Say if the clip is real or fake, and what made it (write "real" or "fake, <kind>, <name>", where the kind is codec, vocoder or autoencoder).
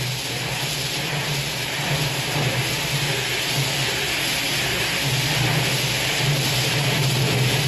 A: real